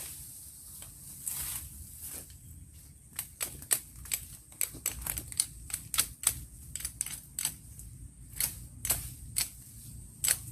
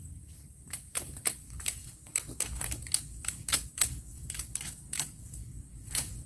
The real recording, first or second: first